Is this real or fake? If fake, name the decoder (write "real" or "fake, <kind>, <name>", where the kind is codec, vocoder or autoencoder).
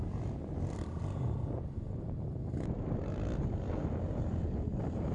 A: real